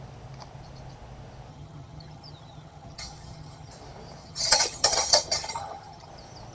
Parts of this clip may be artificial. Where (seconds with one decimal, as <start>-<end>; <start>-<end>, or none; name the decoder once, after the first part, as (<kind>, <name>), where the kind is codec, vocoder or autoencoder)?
1.5-3.7 (vocoder, HiFi-GAN); 4.2-6.1